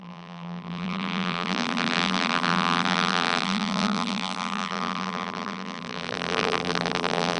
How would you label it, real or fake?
fake